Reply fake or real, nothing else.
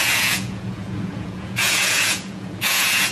fake